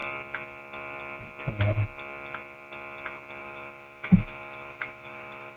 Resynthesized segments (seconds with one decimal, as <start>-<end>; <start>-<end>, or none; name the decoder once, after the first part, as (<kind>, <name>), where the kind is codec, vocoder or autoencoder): 3.4-5.6 (autoencoder, DAC-VAE)

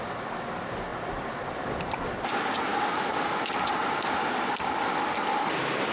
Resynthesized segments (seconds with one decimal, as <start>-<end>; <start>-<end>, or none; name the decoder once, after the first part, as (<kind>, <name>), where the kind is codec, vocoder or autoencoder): 0.0-0.9 (vocoder, BigVGAN v2); 1.5-5.9

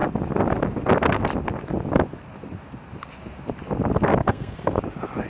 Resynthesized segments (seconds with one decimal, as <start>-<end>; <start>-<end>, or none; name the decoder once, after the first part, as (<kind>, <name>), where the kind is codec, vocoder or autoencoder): 4.2-4.8 (codec, SNAC)

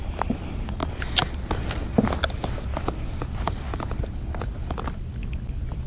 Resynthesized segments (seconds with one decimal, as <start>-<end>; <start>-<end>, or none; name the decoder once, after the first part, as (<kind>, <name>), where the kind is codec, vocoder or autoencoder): 2.7-5.9 (vocoder, BigVGAN v2)

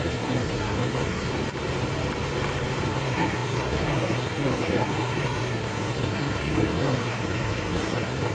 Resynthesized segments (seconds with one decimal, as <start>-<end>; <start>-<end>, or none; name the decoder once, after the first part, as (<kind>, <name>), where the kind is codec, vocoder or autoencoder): 0.0-1.3 (codec, SNAC); 2.9-8.3

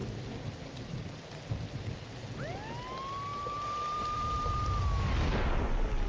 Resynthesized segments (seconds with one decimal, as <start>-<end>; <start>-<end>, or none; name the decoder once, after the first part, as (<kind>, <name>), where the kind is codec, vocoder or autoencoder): 3.3-4.8 (vocoder, BigVGAN v2)